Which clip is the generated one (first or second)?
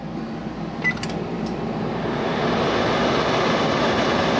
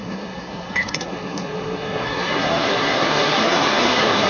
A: second